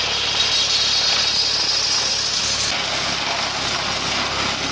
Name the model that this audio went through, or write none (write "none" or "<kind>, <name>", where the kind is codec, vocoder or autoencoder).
none